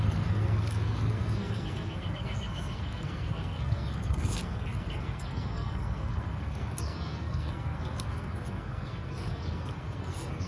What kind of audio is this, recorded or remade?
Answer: remade